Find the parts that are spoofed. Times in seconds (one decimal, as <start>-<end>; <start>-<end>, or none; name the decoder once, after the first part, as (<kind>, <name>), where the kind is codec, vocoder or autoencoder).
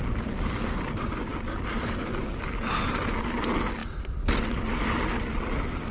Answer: none